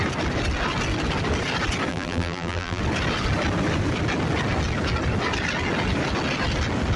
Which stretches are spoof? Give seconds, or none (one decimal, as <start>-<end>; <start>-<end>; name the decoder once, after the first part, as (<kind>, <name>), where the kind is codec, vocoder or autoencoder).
1.9-2.8 (vocoder, BigVGAN v2)